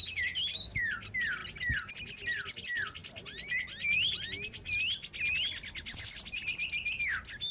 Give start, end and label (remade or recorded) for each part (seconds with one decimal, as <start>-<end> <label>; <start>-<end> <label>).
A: 0.0-7.5 recorded